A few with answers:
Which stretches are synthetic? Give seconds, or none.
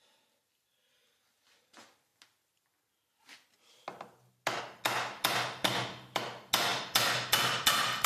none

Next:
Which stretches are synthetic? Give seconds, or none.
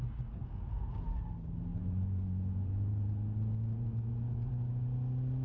0.4-1.2; 1.7-4.5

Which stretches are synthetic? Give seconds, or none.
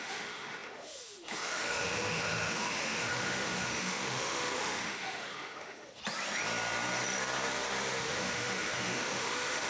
0.0-6.0; 8.0-9.7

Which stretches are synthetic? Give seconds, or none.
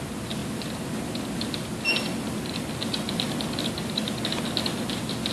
none